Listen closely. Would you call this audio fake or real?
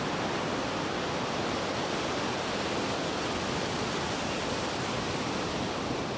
real